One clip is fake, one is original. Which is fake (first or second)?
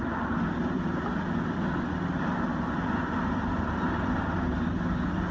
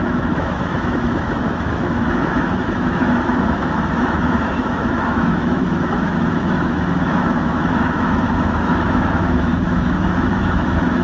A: second